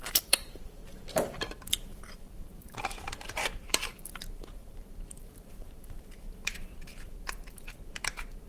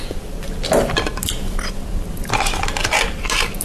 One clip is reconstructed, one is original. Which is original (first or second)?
second